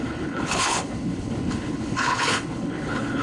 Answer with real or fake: fake